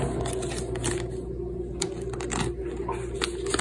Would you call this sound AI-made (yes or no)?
no